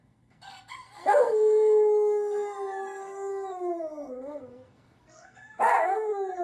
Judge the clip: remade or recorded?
remade